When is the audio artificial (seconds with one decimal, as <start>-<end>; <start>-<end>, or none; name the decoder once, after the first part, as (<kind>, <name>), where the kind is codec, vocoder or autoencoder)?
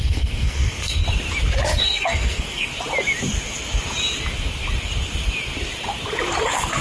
0.0-1.0 (codec, SNAC); 1.8-2.7